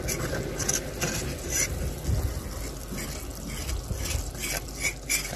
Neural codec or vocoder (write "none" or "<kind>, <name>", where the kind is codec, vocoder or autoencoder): none